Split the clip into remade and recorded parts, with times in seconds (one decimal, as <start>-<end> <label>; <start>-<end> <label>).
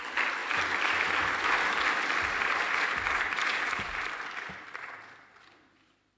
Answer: 0.0-6.2 recorded